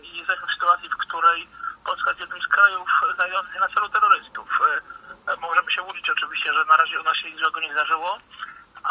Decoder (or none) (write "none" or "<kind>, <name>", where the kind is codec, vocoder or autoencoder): none